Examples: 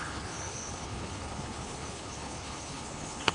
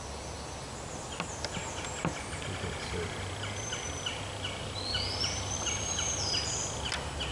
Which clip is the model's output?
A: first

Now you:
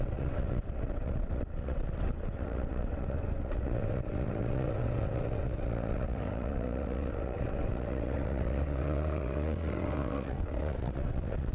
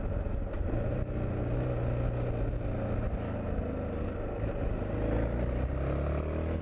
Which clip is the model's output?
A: first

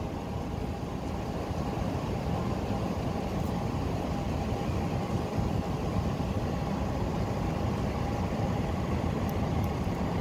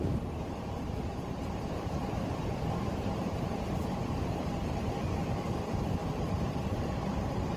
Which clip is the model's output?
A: second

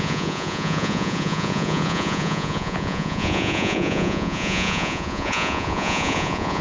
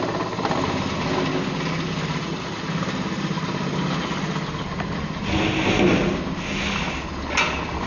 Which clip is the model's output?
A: first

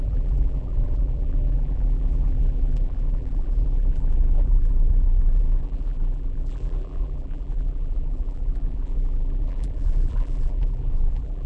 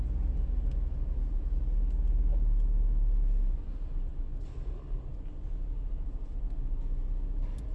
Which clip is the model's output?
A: first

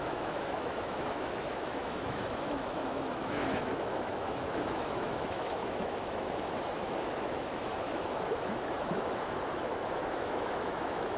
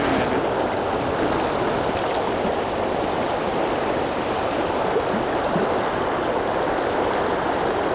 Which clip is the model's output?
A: first